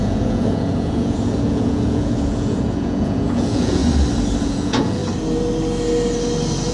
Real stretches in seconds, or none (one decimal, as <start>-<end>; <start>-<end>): 3.8-4.4; 5.0-6.7